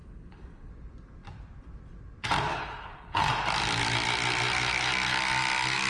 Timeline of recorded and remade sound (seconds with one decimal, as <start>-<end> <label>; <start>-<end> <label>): 0.0-0.7 remade; 0.7-2.5 recorded; 2.5-3.3 remade; 3.3-5.9 recorded